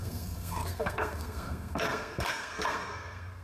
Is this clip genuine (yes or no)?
no